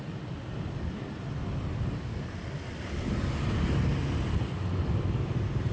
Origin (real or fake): real